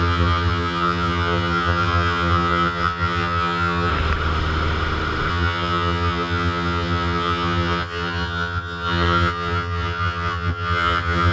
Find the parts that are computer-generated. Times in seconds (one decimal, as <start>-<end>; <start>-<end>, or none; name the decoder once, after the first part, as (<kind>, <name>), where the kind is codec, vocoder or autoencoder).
0.0-3.9 (vocoder, HiFi-GAN); 5.3-11.3